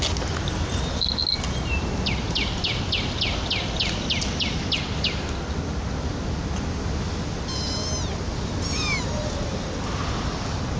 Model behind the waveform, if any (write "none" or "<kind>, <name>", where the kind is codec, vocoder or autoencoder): none